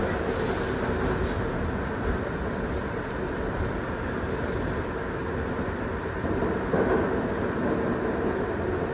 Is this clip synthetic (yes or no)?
no